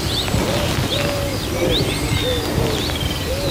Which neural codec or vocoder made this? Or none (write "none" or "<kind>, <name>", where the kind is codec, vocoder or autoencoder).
none